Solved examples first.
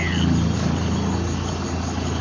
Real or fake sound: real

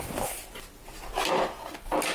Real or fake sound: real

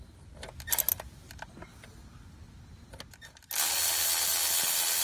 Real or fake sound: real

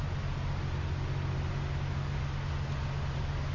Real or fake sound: real